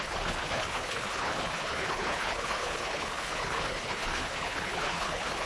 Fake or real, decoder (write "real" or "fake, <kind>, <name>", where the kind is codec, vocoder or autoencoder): fake, codec, HILCodec